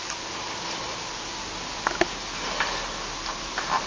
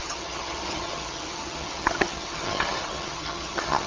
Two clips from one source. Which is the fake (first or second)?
second